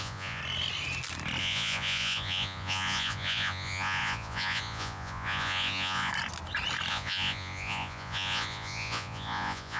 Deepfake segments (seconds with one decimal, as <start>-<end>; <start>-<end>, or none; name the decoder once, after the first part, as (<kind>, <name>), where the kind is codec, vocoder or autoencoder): 0.0-0.4 (vocoder, Vocos); 1.4-6.1; 6.9-9.8